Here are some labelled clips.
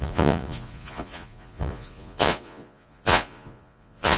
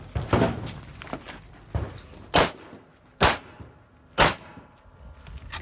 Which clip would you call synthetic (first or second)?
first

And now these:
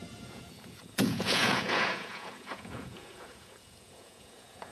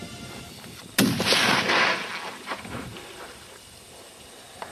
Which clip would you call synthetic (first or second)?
first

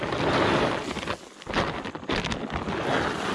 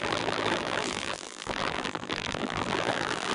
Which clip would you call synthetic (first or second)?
second